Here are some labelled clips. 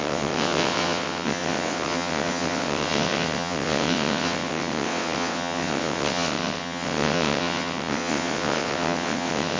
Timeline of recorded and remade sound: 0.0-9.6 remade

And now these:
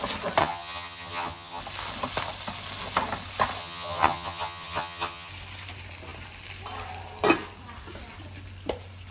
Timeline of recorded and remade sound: 0.0-0.4 recorded; 0.4-1.6 remade; 1.6-3.6 recorded; 3.6-5.3 remade; 5.3-9.1 recorded

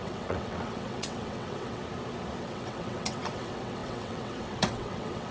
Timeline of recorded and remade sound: 0.0-1.8 remade; 1.8-2.4 recorded; 2.4-5.3 remade

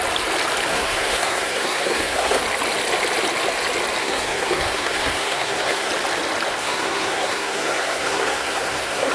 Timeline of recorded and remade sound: 0.0-0.7 recorded; 0.7-2.4 remade; 2.4-4.0 recorded; 4.0-5.9 remade; 5.9-6.6 recorded; 6.6-9.1 remade

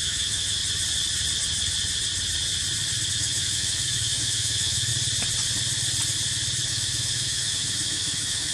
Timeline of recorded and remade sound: 0.0-0.6 remade; 0.6-3.1 recorded; 3.1-4.9 remade; 4.9-6.7 recorded; 6.7-8.5 remade

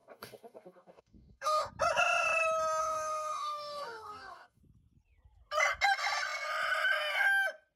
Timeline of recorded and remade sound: 0.0-1.7 remade; 1.7-2.8 recorded; 2.8-4.6 remade; 4.6-7.8 recorded

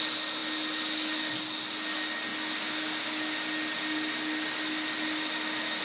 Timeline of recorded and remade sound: 0.0-5.8 recorded